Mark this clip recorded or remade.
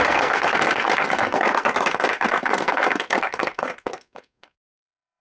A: remade